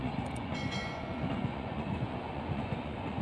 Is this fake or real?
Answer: fake